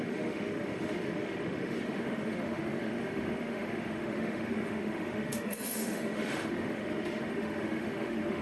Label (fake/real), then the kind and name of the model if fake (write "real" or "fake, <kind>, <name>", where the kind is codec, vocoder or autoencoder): fake, autoencoder, DAC-VAE